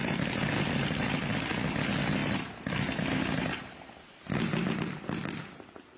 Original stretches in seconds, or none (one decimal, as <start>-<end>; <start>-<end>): 0.0-6.0